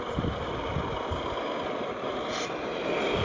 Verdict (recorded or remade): recorded